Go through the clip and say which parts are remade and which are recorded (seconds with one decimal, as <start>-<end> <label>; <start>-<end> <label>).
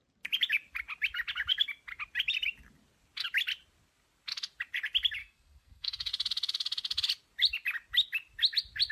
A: 0.0-5.2 recorded; 5.2-6.1 remade; 6.1-8.9 recorded